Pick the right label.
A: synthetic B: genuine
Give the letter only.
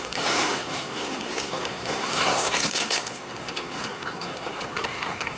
A